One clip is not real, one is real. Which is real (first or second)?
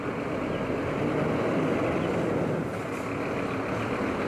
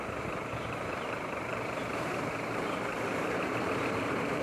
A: first